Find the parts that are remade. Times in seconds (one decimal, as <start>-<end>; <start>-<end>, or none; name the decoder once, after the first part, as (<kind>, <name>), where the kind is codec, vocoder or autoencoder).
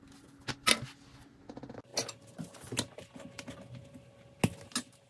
none